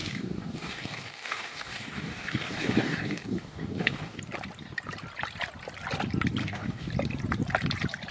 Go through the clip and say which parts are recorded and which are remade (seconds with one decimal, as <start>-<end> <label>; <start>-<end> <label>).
0.0-4.2 remade; 4.2-6.4 recorded; 6.4-6.9 remade; 6.9-8.1 recorded